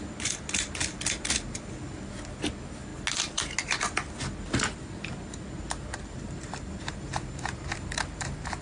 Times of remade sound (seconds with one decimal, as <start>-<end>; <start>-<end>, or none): 6.0-8.6